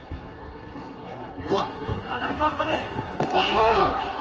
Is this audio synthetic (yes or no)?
yes